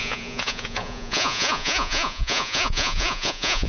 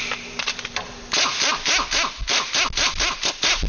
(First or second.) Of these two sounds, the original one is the second